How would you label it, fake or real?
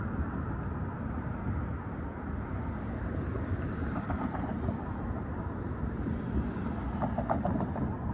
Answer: fake